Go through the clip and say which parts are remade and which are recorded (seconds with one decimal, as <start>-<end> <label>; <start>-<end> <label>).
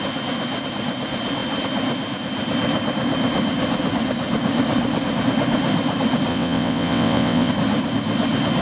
0.0-6.3 recorded; 6.3-7.5 remade; 7.5-8.6 recorded